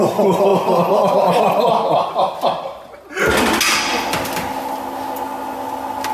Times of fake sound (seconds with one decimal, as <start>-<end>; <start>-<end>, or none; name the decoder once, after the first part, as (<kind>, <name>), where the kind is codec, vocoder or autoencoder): none